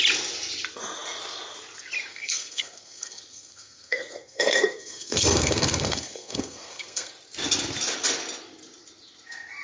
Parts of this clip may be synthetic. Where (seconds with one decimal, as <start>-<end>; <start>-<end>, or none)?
2.1-7.1